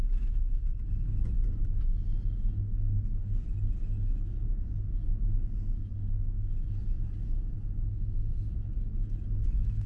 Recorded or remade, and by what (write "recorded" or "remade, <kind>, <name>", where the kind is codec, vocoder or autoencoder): recorded